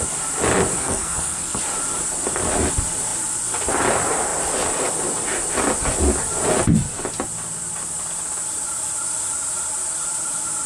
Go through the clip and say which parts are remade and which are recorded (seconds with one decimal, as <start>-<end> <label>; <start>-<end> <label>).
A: 0.0-0.7 recorded; 0.7-1.6 remade; 1.6-10.7 recorded